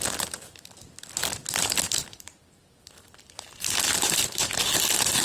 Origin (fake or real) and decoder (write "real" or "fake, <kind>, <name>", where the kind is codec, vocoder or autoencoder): real